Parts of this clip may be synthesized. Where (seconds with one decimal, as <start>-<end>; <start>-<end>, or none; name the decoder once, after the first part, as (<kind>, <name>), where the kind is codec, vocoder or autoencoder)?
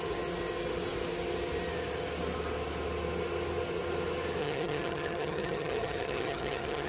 4.4-6.9 (vocoder, HiFi-GAN)